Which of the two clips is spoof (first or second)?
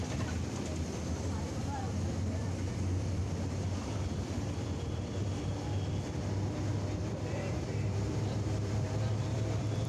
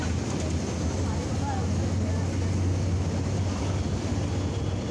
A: first